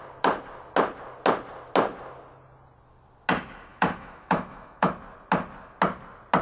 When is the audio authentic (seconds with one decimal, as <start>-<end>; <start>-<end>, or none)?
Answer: 0.0-3.7; 4.9-6.4